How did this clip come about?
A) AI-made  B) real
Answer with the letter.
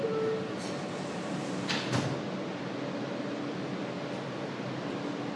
B